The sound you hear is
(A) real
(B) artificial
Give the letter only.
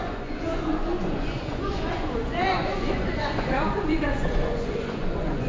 B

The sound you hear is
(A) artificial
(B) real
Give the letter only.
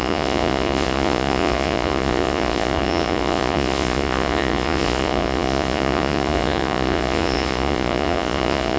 A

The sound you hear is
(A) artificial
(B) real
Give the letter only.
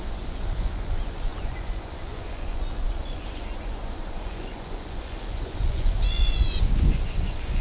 A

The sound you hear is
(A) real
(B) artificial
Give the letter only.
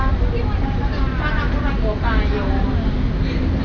A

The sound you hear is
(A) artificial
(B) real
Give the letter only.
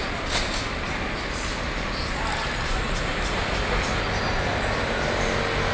B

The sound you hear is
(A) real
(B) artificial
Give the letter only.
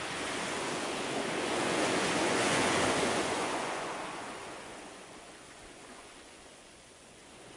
B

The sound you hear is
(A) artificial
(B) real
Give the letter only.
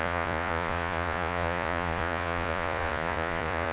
A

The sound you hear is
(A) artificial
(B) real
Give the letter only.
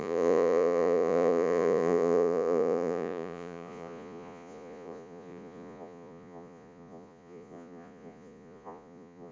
A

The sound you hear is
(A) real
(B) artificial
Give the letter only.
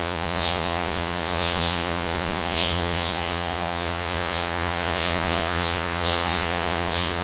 B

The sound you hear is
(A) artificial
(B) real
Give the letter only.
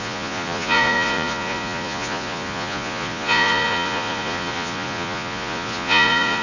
A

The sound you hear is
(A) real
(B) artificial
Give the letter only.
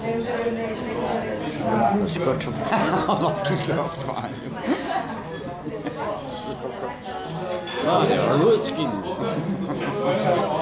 A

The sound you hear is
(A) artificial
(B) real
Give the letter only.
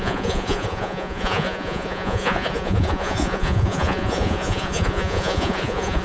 A